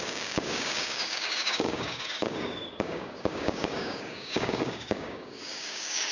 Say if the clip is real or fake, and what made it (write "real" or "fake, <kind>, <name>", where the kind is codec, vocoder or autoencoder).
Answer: fake, codec, DAC